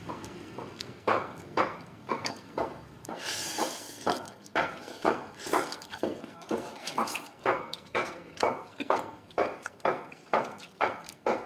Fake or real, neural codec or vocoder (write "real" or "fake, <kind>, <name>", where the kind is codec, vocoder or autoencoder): fake, codec, SNAC